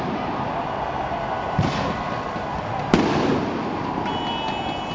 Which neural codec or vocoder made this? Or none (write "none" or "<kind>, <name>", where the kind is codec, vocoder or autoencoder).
none